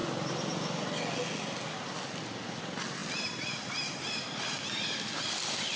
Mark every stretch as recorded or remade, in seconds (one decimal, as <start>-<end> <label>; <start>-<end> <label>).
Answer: 0.0-5.8 recorded

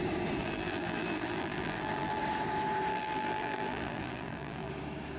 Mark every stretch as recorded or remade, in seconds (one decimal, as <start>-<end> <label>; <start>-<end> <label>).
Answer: 0.0-0.4 recorded; 0.4-2.2 remade; 2.2-2.9 recorded; 2.9-4.7 remade; 4.7-5.2 recorded